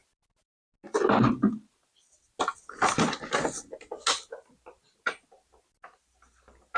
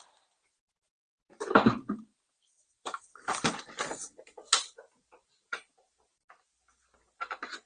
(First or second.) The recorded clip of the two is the first